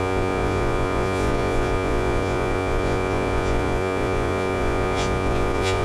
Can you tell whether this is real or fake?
fake